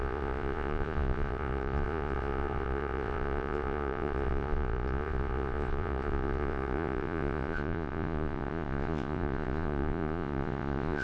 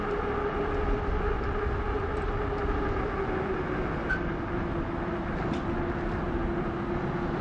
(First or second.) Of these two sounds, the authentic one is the second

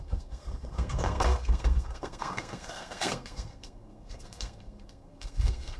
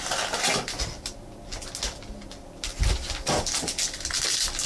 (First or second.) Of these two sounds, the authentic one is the second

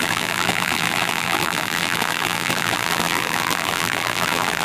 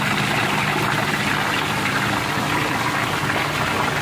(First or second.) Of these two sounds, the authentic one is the second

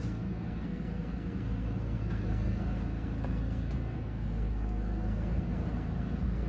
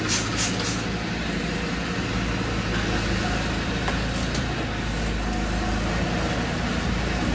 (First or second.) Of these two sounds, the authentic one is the second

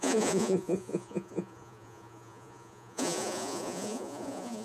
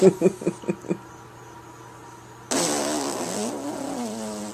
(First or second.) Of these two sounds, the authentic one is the second